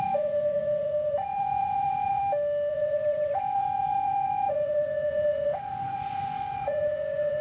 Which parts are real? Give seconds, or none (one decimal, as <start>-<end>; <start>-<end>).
2.2-2.7